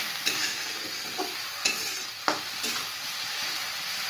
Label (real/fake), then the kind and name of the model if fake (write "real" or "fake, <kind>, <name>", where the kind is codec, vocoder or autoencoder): real